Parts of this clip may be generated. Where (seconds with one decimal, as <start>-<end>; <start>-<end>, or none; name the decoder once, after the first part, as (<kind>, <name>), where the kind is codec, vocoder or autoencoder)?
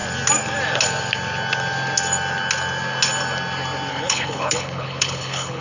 3.9-5.6 (codec, HILCodec)